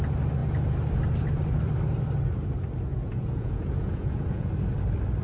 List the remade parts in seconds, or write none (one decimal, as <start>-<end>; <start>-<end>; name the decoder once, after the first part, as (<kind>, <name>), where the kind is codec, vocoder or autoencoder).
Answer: 2.9-4.5 (vocoder, Vocos)